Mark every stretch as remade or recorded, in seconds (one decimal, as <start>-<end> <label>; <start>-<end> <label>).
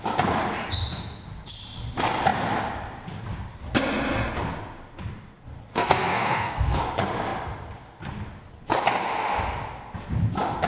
0.0-5.7 recorded; 5.7-6.8 remade; 6.8-10.7 recorded